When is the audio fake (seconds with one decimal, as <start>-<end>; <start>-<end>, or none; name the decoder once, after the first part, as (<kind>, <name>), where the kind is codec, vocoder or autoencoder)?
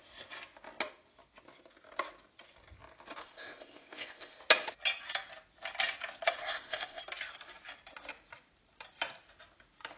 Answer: 3.2-4.4 (codec, ZipCodec); 6.4-7.0